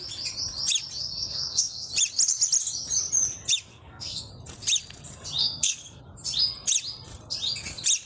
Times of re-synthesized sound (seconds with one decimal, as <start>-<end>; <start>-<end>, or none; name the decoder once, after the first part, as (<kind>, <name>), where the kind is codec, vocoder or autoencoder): 1.0-1.9 (codec, SNAC); 3.7-4.3; 5.4-6.0

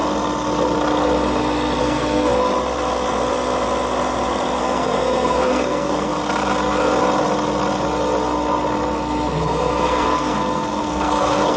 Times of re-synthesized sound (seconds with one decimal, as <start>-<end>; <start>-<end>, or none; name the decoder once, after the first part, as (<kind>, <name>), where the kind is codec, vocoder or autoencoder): 1.8-2.3 (codec, SNAC); 4.6-6.1; 9.4-11.6

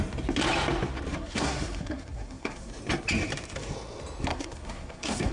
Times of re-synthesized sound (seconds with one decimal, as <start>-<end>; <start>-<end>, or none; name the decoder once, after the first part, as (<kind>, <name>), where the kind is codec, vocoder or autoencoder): 1.1-2.7 (codec, SNAC); 4.3-5.3

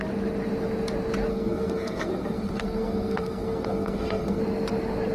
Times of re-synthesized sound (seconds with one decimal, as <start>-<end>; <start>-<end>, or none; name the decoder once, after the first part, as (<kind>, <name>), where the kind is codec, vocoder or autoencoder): 1.3-4.4 (codec, SNAC)

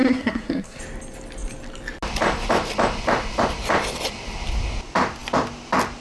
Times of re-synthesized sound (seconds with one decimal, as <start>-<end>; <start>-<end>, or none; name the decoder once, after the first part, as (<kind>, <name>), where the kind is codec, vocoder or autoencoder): 0.0-0.8 (codec, SNAC)